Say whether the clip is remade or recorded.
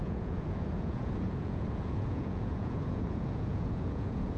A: remade